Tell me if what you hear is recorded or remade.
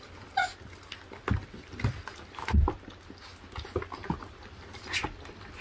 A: recorded